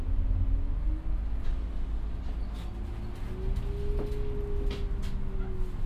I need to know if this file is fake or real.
real